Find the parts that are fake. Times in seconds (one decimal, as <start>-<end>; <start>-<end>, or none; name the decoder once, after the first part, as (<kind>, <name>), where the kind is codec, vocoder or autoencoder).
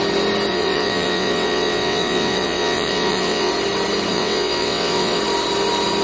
0.5-3.5 (vocoder, WaveNeXt); 4.1-5.2